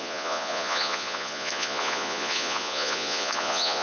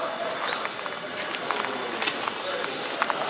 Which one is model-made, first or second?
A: first